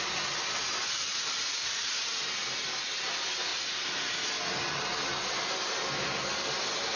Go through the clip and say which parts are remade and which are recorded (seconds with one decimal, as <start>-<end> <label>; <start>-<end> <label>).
0.0-1.1 recorded; 1.1-1.9 remade; 1.9-7.0 recorded